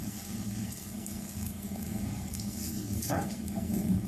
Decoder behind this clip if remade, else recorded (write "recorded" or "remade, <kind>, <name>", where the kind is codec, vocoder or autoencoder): remade, codec, SNAC